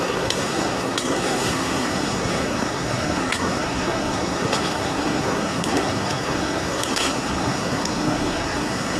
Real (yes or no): no